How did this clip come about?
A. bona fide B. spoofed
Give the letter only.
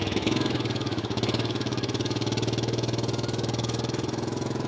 B